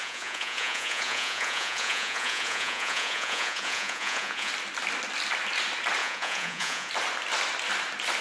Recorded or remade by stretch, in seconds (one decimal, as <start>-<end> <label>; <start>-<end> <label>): 0.0-4.5 remade; 4.5-6.0 recorded; 6.0-6.9 remade; 6.9-8.2 recorded